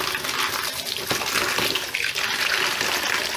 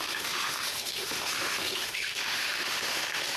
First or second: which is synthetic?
second